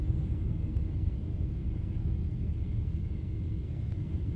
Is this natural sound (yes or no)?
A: no